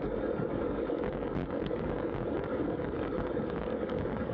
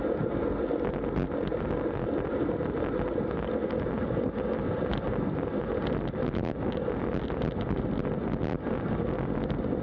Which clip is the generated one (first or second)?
first